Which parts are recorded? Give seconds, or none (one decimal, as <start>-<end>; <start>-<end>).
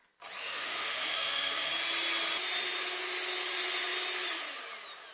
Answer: 0.0-0.4; 1.7-5.1